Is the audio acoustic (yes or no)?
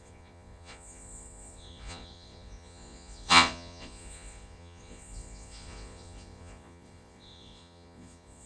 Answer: no